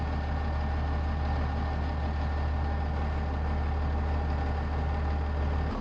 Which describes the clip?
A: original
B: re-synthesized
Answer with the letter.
A